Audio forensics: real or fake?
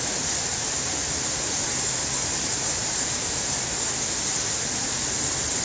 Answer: real